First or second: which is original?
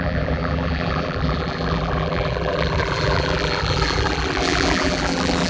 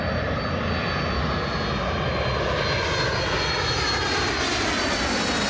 second